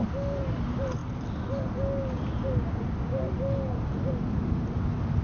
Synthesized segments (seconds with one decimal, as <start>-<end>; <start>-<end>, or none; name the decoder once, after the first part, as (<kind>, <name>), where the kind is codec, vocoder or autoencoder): none